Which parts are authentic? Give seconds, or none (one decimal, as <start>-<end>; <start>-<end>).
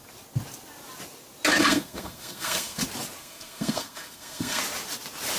0.0-1.6; 2.8-3.2; 4.6-5.4